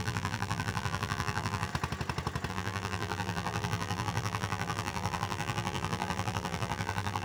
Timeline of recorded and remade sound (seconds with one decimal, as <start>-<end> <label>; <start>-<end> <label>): 0.0-1.7 remade; 1.7-2.5 recorded; 2.5-7.2 remade